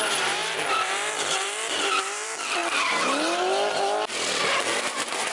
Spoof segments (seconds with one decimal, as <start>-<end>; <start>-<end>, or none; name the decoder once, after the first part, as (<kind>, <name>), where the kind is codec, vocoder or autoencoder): 0.0-2.6 (vocoder, BigVGAN v2); 4.8-5.3